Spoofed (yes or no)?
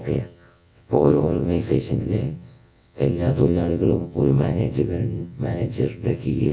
yes